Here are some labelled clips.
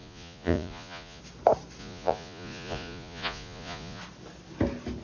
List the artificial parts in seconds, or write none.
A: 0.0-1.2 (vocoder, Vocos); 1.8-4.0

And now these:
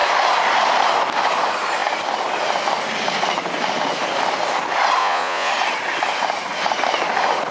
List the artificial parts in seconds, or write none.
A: 5.0-5.5 (vocoder, Vocos)

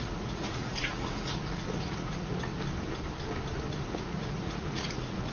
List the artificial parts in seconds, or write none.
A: 0.0-2.5 (vocoder, Vocos); 3.9-5.3

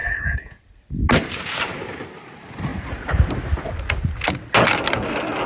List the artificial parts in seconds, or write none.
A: 0.0-0.6 (vocoder, Vocos)

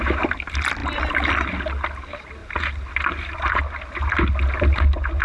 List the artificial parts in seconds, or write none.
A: none

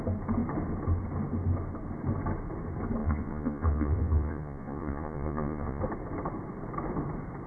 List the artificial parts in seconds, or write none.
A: 3.0-5.8 (vocoder, Vocos)

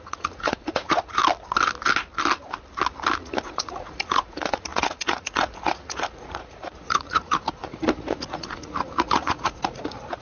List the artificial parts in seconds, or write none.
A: 0.0-1.2 (vocoder, Vocos); 3.2-10.2

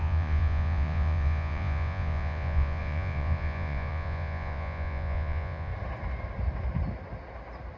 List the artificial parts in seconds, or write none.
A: 0.0-5.7 (vocoder, Vocos)